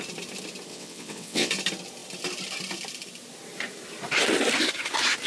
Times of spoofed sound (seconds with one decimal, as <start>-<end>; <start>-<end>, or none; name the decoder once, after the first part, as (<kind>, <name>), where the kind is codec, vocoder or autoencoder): 0.7-1.5 (vocoder, WaveNeXt)